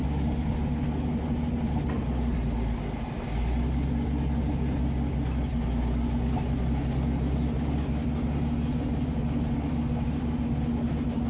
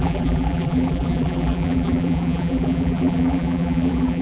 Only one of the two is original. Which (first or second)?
first